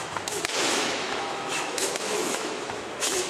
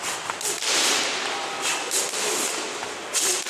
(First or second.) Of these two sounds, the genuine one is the second